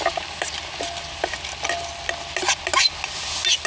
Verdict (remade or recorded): recorded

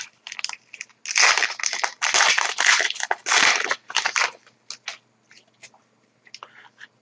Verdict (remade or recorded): recorded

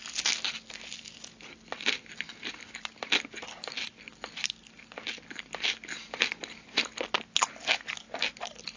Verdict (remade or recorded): recorded